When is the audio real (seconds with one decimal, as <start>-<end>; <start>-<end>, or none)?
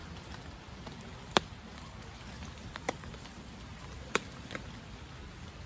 0.0-5.7